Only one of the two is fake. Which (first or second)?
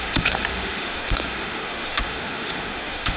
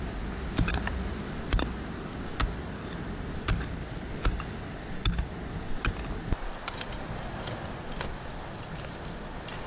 first